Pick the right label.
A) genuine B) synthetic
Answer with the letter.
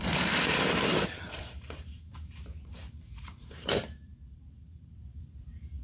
B